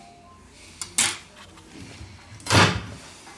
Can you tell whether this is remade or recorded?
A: recorded